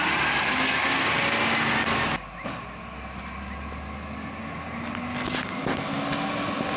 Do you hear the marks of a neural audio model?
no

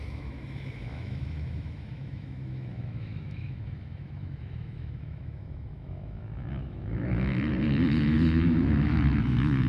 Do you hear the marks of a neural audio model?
yes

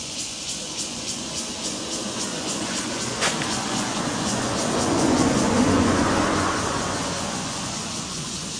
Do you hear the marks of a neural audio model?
yes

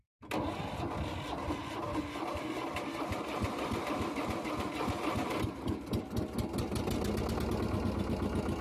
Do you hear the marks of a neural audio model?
no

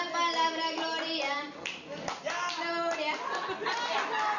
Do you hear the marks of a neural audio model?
no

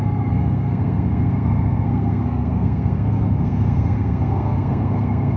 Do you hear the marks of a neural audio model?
yes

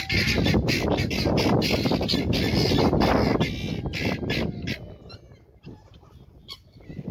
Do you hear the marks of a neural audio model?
no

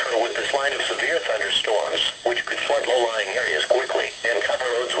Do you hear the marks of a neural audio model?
yes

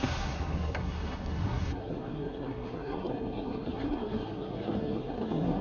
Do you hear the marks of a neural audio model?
yes